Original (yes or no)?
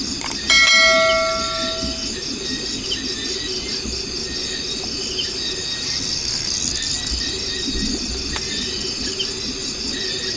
yes